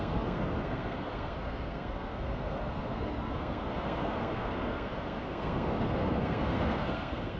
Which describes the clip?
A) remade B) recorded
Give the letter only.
A